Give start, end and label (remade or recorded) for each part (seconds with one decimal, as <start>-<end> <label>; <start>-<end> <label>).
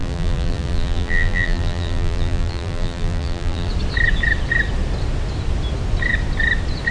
0.0-3.7 remade; 3.7-6.9 recorded